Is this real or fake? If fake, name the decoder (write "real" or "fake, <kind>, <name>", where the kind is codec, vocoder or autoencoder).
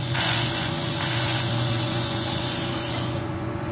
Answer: fake, vocoder, Vocos